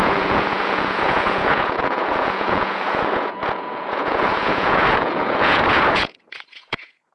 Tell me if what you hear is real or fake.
fake